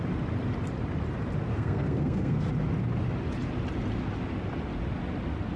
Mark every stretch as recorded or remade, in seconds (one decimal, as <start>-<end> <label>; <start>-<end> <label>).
0.0-1.5 recorded; 1.5-2.5 remade; 2.5-5.6 recorded